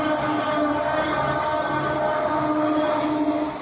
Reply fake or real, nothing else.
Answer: real